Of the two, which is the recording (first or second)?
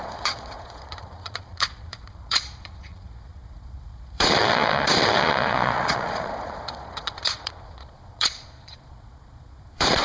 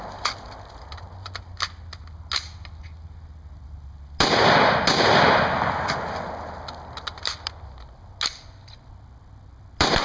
second